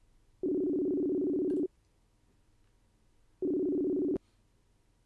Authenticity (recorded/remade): recorded